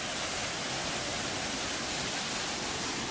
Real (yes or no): yes